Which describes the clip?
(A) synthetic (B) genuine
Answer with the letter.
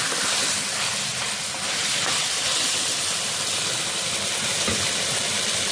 B